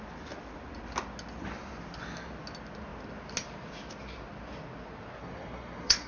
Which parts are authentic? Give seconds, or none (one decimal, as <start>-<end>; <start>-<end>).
0.0-5.2